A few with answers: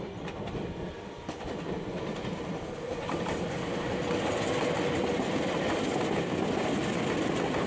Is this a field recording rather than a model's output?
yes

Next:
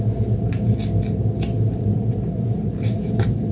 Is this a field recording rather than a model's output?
yes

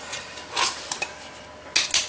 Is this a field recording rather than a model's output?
yes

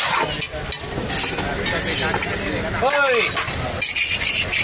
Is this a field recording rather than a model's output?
yes